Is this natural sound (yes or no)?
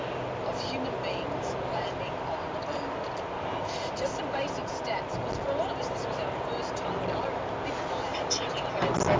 yes